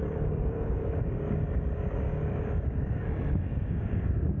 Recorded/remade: remade